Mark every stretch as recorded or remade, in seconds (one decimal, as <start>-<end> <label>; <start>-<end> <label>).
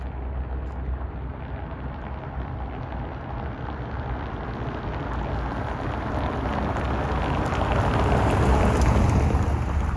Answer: 0.0-7.7 recorded; 7.7-8.6 remade; 8.6-10.0 recorded